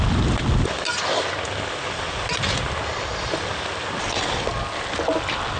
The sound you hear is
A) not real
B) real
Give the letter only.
B